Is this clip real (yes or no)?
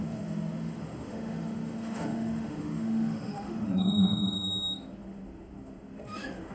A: no